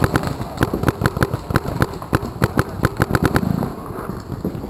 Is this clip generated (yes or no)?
no